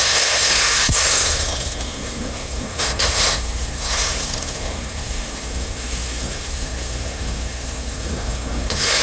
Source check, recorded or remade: remade